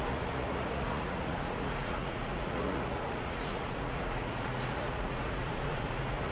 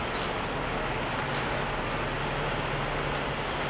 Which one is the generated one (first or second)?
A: first